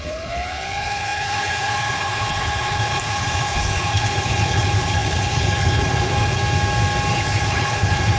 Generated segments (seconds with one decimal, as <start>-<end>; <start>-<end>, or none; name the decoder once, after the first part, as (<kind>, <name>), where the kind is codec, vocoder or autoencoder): 0.0-6.4 (codec, HILCodec); 7.1-8.2